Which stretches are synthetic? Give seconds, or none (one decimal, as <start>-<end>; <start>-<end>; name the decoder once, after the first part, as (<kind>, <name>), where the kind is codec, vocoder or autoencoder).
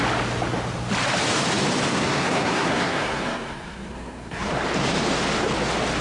1.9-4.5 (codec, SNAC)